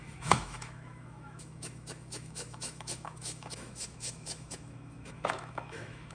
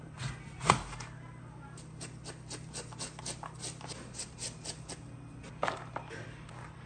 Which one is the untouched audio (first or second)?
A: second